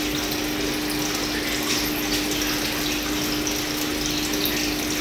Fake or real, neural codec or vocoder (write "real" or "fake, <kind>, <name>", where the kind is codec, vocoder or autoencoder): real